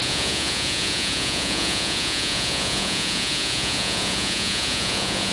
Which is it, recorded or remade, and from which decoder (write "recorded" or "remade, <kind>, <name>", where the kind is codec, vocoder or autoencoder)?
remade, vocoder, Vocos